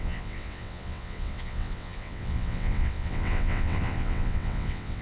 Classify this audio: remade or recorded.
remade